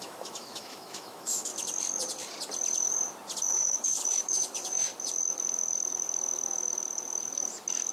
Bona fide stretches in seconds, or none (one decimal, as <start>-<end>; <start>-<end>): 1.5-3.5; 4.9-7.9